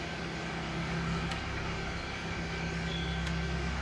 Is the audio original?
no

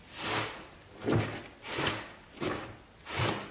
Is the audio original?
yes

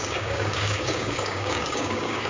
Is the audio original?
no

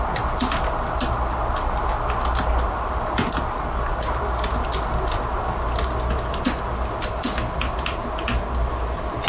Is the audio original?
yes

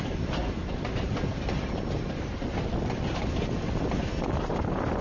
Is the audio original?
yes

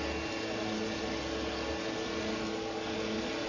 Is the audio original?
yes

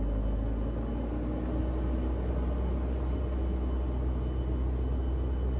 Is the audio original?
yes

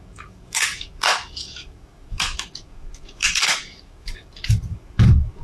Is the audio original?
no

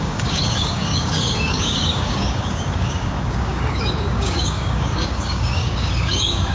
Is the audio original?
no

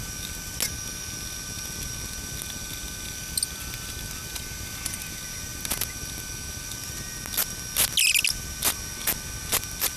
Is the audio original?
yes